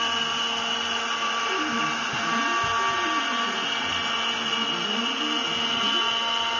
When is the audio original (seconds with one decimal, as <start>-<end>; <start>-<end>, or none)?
0.0-6.6